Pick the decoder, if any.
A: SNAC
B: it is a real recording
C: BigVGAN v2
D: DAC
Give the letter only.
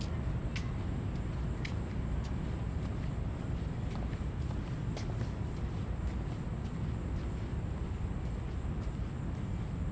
B